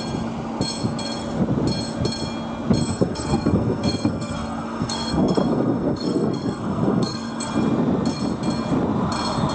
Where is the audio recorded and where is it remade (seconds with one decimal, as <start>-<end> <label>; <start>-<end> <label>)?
0.0-2.8 recorded; 2.8-7.5 remade; 7.5-9.5 recorded